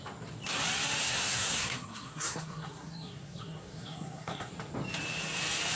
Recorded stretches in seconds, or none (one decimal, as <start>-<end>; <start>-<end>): 0.0-1.0; 4.5-5.8